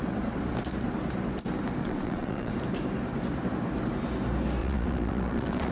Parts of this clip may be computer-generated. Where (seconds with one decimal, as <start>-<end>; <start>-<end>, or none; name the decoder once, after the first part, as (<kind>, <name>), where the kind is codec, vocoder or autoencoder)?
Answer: 1.8-2.5 (vocoder, Vocos); 4.6-5.7